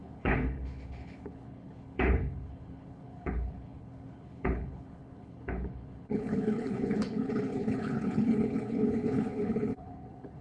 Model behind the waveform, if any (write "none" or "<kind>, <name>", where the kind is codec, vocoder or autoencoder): codec, HILCodec